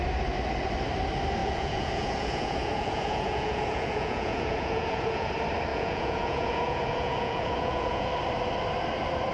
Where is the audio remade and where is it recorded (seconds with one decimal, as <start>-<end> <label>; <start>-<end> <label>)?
0.0-1.4 recorded; 1.4-5.3 remade; 5.3-5.7 recorded; 5.7-8.1 remade; 8.1-9.3 recorded